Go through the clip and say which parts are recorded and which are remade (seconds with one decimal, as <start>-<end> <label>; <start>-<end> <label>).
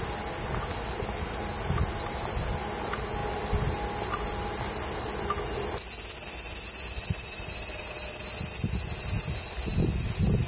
0.0-10.5 recorded